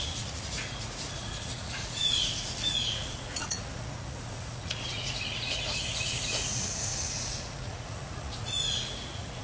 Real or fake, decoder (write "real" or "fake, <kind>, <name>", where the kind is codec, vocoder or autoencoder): fake, vocoder, Vocos